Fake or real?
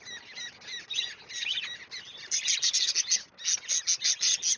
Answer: real